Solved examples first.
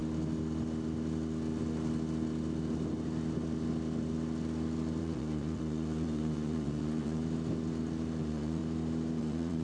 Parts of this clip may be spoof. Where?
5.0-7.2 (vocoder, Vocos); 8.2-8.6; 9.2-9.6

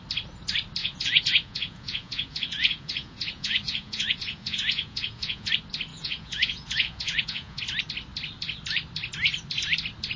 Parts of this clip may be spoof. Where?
0.8-5.5 (vocoder, Vocos); 5.9-7.6

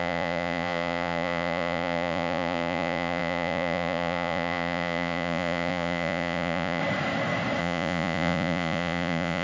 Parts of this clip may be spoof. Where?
0.0-6.8 (vocoder, Vocos); 7.6-9.4

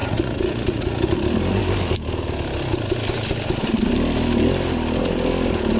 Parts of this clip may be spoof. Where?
0.0-1.1 (vocoder, Vocos)